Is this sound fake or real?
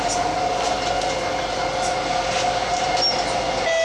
real